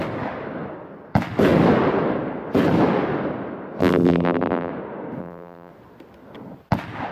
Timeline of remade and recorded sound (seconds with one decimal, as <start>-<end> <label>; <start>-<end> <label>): 0.0-3.8 recorded; 3.8-4.7 remade; 4.7-5.2 recorded; 5.2-5.7 remade; 5.7-7.1 recorded